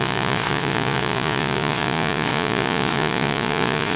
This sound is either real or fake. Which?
fake